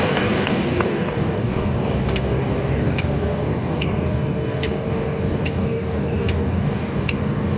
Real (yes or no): no